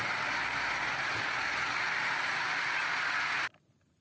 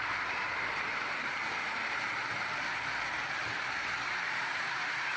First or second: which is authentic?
first